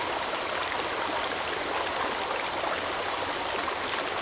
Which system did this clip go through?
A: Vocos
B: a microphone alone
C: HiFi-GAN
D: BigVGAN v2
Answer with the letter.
B